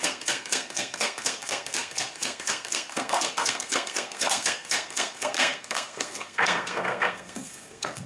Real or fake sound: fake